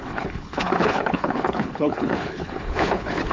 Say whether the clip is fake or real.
fake